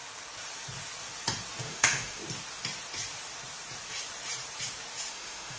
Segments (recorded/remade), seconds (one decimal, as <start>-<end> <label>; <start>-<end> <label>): 0.0-1.6 recorded; 1.6-2.2 remade; 2.2-5.1 recorded; 5.1-5.6 remade